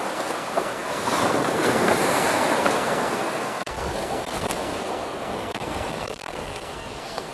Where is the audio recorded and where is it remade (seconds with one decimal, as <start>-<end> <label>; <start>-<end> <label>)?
0.0-7.3 remade

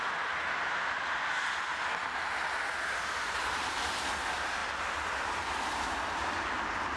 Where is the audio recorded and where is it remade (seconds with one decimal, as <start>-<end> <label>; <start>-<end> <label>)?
0.0-7.0 recorded

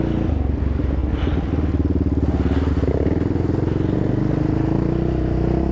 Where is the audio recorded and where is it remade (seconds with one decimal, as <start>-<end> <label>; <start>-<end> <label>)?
0.0-5.7 recorded

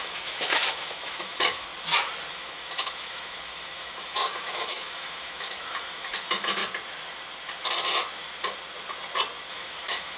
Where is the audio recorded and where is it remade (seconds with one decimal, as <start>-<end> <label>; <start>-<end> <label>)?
0.0-1.7 remade; 1.7-2.3 recorded; 2.3-6.6 remade; 6.6-9.5 recorded; 9.5-10.2 remade

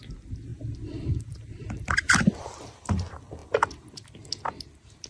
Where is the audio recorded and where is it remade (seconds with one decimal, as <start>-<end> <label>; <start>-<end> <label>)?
0.0-0.5 recorded; 0.5-2.9 remade; 2.9-5.1 recorded

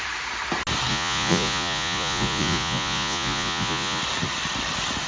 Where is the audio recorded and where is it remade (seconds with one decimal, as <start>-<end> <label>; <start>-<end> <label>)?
0.0-0.9 recorded; 0.9-4.0 remade; 4.0-5.1 recorded